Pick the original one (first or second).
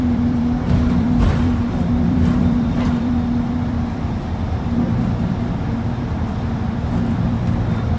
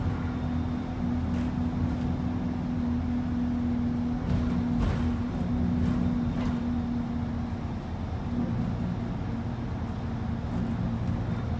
second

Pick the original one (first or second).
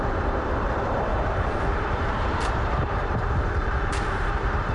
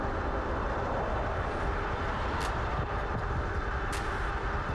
second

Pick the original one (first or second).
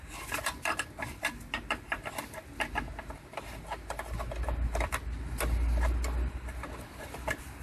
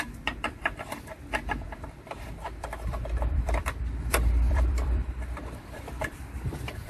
first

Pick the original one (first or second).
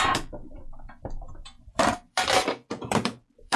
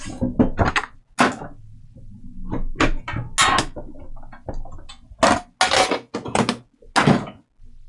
second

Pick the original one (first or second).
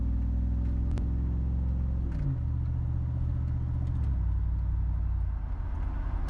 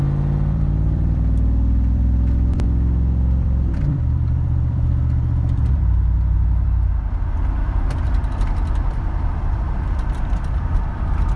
first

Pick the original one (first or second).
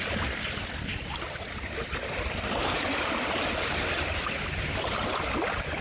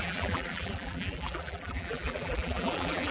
first